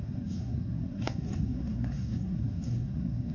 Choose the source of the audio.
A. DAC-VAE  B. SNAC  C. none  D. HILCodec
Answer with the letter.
B